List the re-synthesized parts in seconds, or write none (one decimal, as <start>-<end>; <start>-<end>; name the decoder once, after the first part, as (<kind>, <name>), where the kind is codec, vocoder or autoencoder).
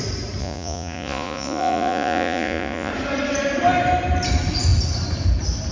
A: 0.4-2.9 (vocoder, Vocos)